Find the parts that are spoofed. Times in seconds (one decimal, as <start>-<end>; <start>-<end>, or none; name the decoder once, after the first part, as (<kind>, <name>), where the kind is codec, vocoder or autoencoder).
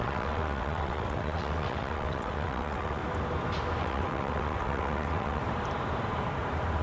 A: 0.0-3.0 (vocoder, WaveNeXt); 3.8-5.4